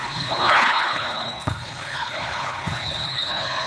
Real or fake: fake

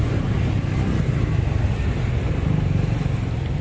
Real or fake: real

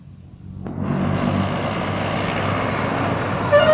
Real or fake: real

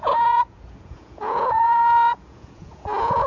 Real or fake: fake